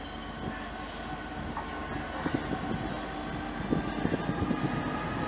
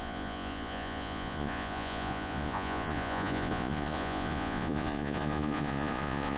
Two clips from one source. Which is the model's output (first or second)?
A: second